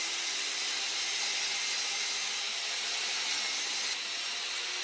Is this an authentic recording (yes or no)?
yes